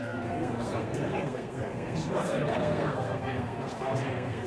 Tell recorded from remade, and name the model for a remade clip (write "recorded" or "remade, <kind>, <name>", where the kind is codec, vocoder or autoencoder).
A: remade, codec, SNAC